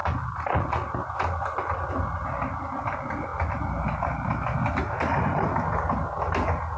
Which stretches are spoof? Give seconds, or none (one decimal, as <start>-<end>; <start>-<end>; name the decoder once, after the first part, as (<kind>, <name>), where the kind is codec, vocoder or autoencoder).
none